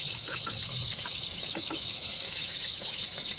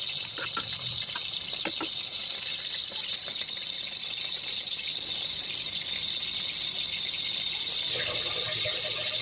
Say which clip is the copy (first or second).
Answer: first